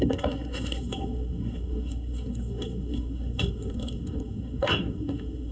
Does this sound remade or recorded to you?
remade